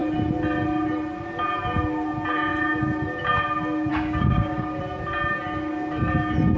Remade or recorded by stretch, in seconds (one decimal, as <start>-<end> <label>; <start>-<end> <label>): 0.0-3.9 recorded; 3.9-4.8 remade; 4.8-6.6 recorded